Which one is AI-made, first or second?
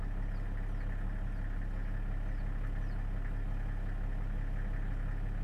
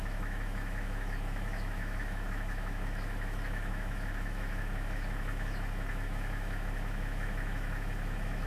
second